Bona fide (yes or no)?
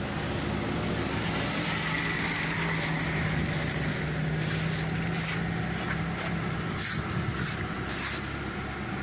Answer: yes